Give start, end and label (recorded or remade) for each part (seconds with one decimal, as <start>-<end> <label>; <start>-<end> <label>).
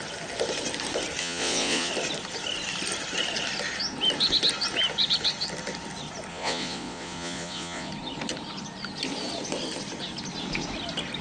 0.0-1.2 recorded; 1.2-1.9 remade; 1.9-6.3 recorded; 6.3-7.9 remade; 7.9-11.2 recorded